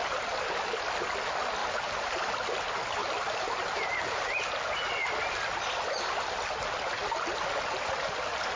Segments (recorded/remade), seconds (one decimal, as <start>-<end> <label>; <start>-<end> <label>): 0.0-0.5 remade; 0.5-1.6 recorded; 1.6-2.2 remade; 2.2-3.0 recorded; 3.0-4.2 remade; 4.2-8.6 recorded